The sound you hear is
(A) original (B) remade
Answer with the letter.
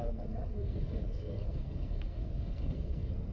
B